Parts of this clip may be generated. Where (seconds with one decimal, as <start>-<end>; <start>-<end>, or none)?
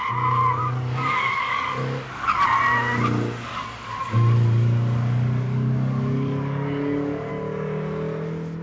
0.6-2.4; 3.5-7.3